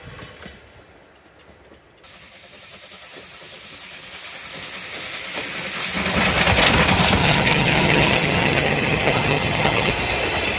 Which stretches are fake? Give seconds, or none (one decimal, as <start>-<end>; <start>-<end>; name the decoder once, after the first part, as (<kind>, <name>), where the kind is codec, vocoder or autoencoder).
7.2-9.9 (vocoder, HiFi-GAN)

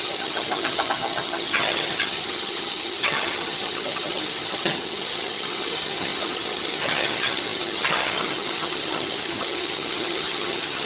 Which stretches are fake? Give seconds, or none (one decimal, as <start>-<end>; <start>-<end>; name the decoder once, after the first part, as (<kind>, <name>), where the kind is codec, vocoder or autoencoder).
0.0-10.9 (vocoder, HiFi-GAN)